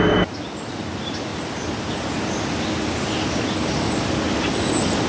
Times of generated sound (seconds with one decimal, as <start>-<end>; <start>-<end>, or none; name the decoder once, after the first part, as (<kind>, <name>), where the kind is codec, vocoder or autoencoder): 1.3-1.9 (vocoder, BigVGAN v2)